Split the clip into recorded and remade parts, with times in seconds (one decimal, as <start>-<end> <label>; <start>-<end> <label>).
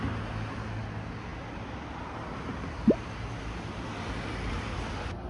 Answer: 0.0-5.3 recorded